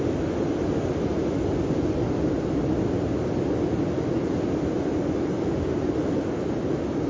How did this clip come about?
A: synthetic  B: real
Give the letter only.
B